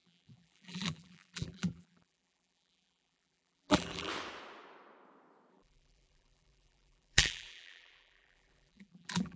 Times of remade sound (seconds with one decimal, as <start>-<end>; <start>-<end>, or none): 0.0-4.1; 5.5-9.4